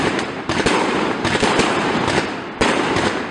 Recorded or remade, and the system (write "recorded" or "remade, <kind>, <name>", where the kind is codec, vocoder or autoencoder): remade, vocoder, BigVGAN v2